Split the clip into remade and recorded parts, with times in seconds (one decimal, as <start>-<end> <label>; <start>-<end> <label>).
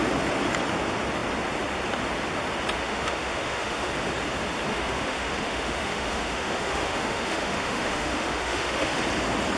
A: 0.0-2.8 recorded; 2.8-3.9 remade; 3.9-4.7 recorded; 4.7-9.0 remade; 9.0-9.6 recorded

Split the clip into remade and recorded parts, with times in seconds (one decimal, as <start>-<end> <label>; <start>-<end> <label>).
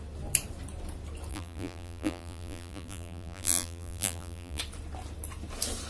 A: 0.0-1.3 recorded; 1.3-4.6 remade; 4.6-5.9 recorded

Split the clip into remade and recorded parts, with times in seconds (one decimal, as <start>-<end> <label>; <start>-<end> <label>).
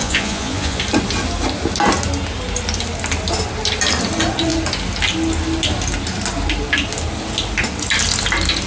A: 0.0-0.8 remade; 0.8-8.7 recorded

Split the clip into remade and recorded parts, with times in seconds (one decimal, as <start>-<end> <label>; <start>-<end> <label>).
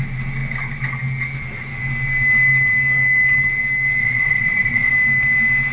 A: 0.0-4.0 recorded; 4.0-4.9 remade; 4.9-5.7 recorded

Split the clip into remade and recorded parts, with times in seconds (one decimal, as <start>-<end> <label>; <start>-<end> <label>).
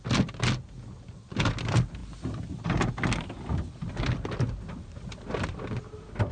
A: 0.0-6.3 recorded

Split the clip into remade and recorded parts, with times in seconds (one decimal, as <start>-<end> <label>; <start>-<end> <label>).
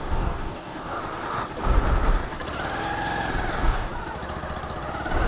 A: 0.0-1.0 remade; 1.0-3.5 recorded; 3.5-3.9 remade; 3.9-5.3 recorded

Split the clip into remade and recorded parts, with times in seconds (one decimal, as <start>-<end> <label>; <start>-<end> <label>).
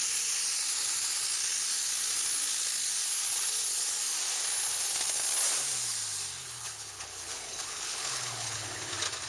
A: 0.0-6.4 recorded; 6.4-8.9 remade; 8.9-9.3 recorded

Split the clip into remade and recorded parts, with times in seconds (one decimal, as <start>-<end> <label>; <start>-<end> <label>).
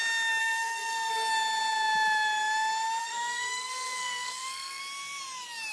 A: 0.0-0.4 recorded; 0.4-1.1 remade; 1.1-3.0 recorded; 3.0-4.8 remade; 4.8-5.7 recorded